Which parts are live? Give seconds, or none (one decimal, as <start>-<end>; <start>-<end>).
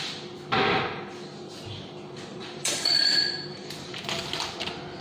0.0-2.3; 4.0-5.0